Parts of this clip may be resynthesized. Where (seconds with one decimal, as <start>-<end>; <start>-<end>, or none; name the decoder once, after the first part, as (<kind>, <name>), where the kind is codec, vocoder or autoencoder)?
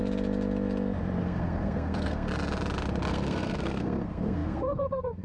1.2-2.3 (codec, SNAC); 3.1-5.2